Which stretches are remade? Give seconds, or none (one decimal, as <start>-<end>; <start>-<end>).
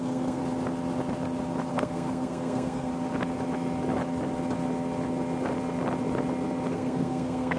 0.0-0.4; 1.7-2.9; 6.7-7.6